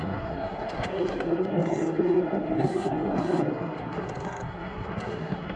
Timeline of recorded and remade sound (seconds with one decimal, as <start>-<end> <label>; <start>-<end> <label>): 0.0-5.6 remade